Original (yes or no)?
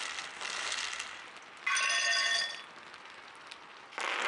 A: yes